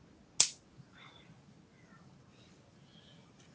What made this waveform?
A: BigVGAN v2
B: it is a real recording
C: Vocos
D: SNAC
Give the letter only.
B